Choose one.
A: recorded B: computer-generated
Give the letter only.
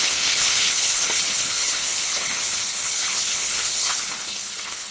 B